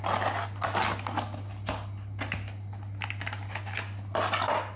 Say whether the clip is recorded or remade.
recorded